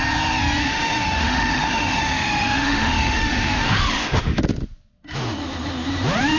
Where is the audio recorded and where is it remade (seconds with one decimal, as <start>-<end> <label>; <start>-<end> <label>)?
0.0-0.6 recorded; 0.6-4.4 remade; 4.4-6.4 recorded